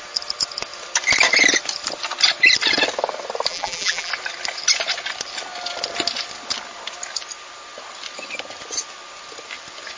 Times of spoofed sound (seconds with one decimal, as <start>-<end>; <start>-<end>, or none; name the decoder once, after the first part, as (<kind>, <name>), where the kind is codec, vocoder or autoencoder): 3.5-4.1 (vocoder, BigVGAN v2)